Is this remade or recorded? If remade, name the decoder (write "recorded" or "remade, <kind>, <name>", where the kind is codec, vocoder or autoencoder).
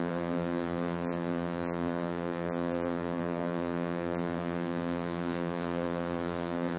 remade, vocoder, BigVGAN v2